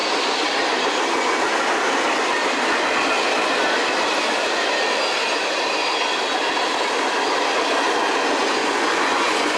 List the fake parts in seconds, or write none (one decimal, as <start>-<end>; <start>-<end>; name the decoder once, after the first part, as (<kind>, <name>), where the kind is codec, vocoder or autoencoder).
8.6-9.6 (vocoder, Vocos)